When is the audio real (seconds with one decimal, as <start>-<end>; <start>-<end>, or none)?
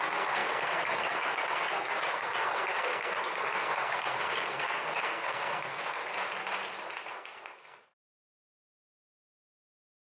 6.0-7.1